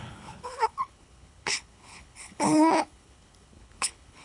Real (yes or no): no